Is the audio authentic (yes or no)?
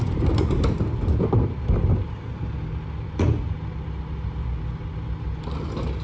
yes